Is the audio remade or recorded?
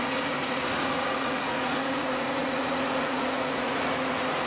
remade